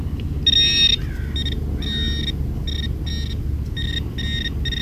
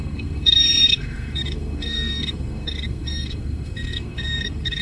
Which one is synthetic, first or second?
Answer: second